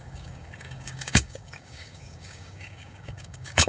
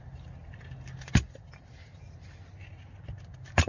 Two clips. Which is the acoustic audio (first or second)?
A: second